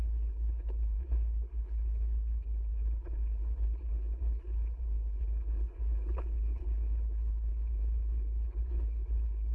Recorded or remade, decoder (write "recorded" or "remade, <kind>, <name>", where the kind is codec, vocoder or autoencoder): remade, codec, HILCodec